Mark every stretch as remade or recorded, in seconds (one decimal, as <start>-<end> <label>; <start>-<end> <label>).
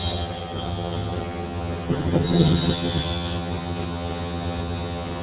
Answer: 0.0-5.2 remade